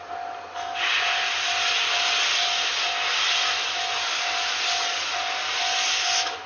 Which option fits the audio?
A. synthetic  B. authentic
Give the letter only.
B